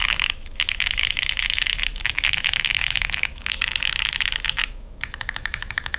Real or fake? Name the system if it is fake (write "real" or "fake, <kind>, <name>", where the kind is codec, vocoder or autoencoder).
fake, autoencoder, DAC-VAE